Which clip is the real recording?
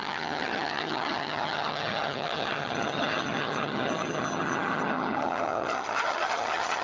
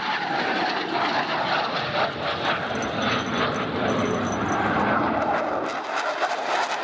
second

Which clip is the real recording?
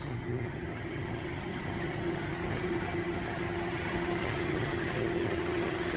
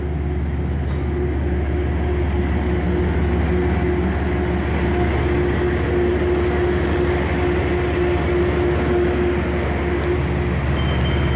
second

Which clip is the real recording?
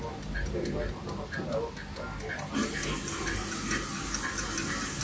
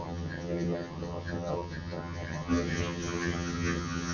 first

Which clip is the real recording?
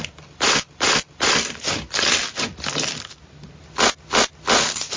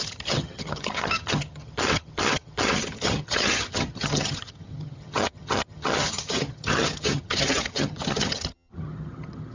first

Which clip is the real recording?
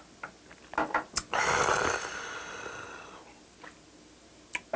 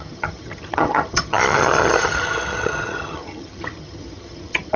first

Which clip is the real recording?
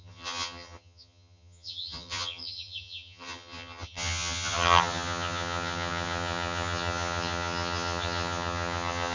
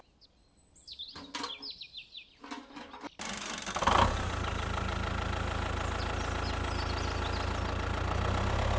second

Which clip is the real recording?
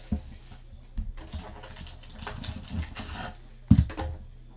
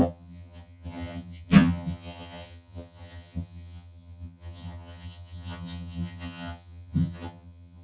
first